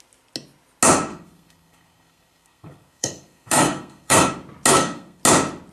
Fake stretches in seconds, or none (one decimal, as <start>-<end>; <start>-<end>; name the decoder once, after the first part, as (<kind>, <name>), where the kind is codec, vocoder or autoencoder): 1.1-4.3 (codec, SNAC); 4.7-5.2